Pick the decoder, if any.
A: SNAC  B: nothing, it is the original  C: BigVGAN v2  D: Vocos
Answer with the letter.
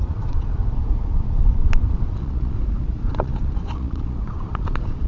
D